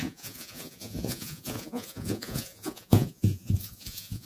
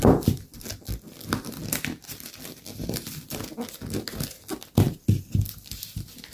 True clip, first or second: second